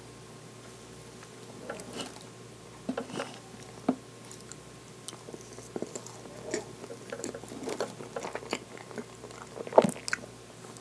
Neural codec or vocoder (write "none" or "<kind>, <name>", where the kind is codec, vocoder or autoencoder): none